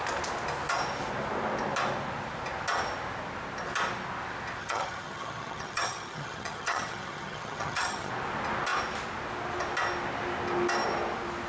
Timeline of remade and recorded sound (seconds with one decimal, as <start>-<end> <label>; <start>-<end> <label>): 0.0-4.6 recorded; 4.6-8.1 remade; 8.1-11.5 recorded